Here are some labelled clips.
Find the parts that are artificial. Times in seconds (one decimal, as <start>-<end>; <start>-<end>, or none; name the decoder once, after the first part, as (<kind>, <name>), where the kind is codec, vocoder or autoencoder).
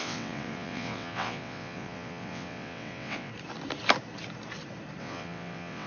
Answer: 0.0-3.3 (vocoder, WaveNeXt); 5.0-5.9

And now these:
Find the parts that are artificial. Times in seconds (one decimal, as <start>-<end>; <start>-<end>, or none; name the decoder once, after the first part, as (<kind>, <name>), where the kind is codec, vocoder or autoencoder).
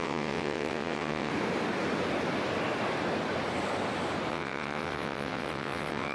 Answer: 0.0-1.3 (vocoder, WaveNeXt); 4.3-6.1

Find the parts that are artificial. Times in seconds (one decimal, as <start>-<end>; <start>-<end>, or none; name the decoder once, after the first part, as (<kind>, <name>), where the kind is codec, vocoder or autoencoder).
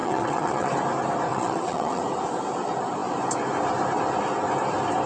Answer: 0.0-0.7 (vocoder, WaveNeXt); 1.3-2.0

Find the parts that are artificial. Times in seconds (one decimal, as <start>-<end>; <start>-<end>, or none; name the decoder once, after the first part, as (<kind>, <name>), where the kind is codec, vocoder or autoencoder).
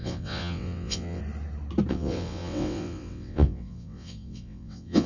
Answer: 0.0-1.2 (vocoder, WaveNeXt); 1.9-5.1